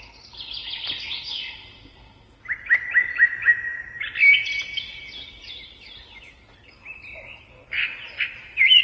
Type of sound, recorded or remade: recorded